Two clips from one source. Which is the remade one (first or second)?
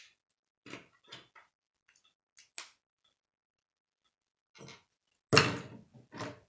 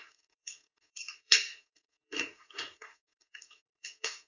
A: second